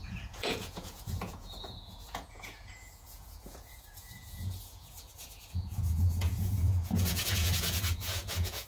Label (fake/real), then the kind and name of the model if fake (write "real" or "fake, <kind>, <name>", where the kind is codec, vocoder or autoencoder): fake, vocoder, Vocos